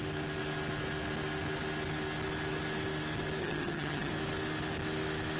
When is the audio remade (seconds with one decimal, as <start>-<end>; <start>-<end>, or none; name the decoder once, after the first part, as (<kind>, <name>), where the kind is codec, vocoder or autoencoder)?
3.4-4.1 (vocoder, HiFi-GAN)